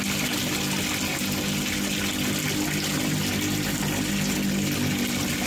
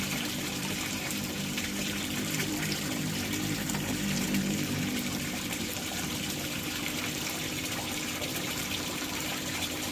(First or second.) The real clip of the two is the first